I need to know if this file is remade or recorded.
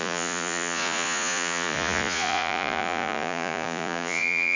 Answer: remade